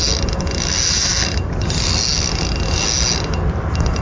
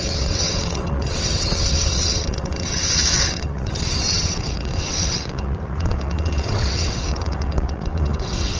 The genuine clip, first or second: first